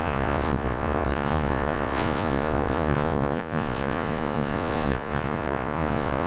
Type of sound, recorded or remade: remade